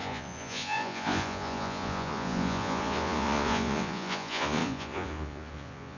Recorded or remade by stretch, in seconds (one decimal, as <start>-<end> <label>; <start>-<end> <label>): 0.0-6.0 remade